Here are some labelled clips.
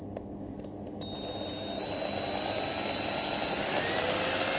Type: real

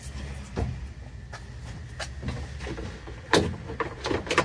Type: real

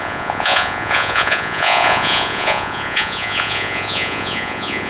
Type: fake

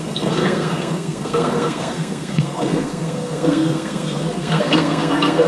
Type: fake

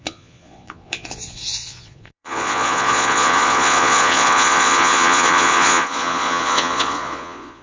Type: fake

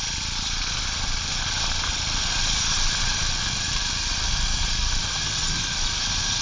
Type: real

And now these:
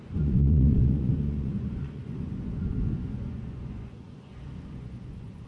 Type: fake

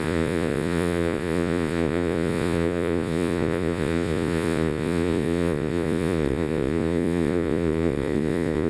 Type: fake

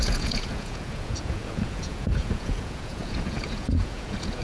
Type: fake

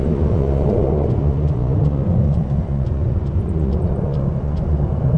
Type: fake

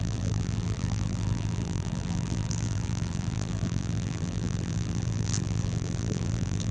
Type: fake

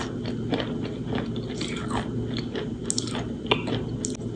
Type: real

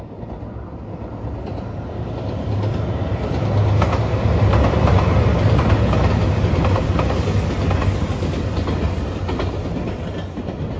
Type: real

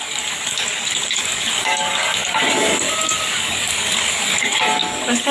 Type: fake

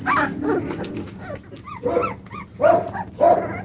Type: real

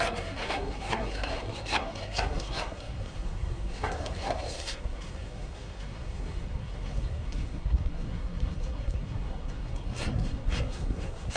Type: fake